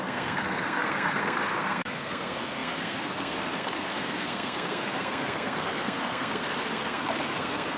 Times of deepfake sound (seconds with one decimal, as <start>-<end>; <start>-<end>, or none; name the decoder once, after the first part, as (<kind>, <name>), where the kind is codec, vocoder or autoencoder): 0.0-7.8 (codec, SNAC)